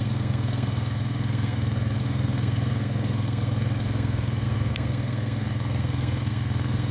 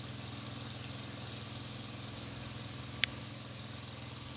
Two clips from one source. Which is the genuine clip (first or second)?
second